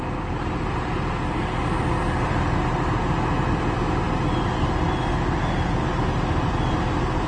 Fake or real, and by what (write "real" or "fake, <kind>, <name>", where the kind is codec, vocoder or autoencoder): real